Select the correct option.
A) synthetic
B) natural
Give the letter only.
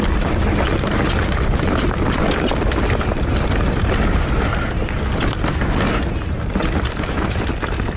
B